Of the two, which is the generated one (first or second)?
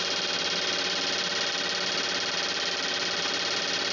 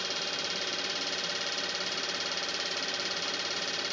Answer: second